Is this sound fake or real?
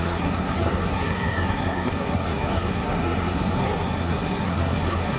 fake